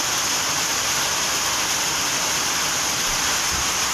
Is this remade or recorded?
recorded